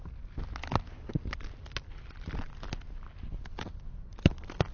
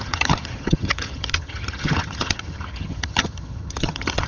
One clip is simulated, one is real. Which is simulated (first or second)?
second